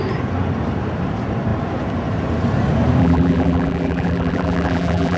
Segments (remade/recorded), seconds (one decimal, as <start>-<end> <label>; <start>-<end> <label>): 0.0-3.0 recorded; 3.0-5.2 remade